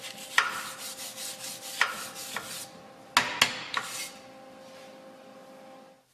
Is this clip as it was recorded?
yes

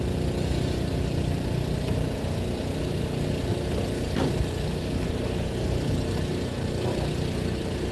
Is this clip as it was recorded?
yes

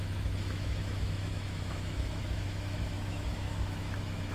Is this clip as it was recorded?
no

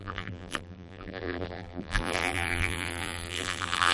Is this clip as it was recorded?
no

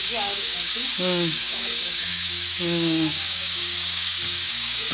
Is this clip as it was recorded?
no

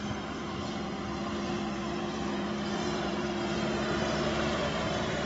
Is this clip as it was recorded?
no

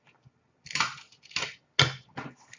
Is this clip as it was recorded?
yes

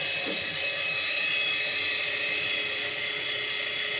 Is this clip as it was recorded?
yes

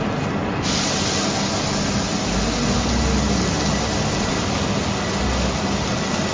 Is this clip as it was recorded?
yes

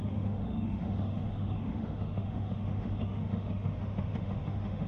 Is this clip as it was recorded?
no